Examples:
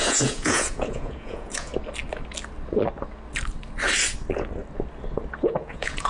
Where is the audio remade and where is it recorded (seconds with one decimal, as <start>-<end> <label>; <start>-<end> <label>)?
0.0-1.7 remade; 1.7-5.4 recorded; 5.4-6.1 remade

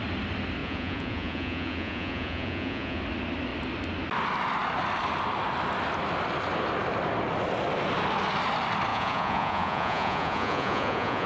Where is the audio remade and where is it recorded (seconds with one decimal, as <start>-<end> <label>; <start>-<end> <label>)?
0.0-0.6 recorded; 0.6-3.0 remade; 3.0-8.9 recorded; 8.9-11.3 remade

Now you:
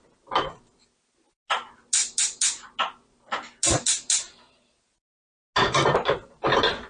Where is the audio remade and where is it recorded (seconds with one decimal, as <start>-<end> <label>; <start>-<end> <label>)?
0.0-6.9 recorded